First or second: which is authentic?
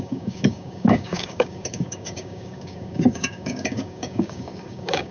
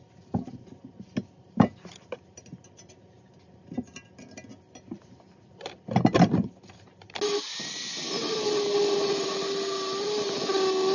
second